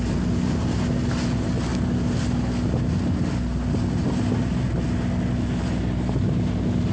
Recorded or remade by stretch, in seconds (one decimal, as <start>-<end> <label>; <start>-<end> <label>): 0.0-6.9 recorded